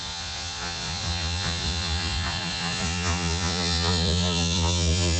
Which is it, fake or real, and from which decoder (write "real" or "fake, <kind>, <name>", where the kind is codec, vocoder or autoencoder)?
fake, vocoder, Vocos